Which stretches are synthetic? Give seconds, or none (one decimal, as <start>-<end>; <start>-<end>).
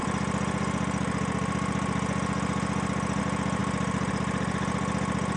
none